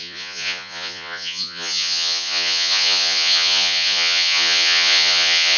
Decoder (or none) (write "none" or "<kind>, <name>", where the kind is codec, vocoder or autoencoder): vocoder, Vocos